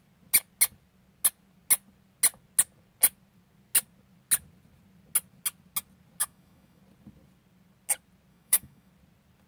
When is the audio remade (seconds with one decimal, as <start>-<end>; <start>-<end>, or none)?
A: 6.2-6.8; 8.3-8.9